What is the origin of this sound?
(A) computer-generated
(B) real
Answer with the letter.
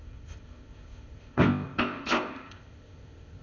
A